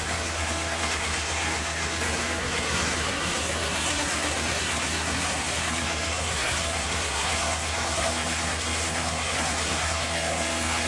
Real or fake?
fake